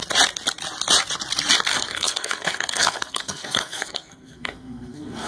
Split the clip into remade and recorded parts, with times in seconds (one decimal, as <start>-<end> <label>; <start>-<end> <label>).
0.0-1.7 recorded; 1.7-5.3 remade